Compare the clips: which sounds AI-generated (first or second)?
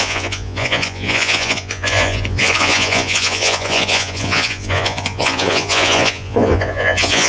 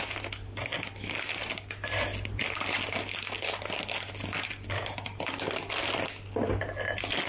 first